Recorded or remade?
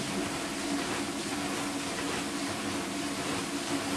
recorded